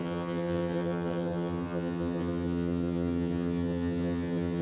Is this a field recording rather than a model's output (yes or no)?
no